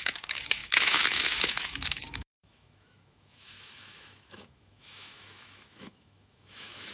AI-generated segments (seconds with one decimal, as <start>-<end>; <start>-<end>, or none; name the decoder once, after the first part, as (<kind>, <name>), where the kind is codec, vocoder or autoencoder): 0.0-6.9 (autoencoder, DAC-VAE)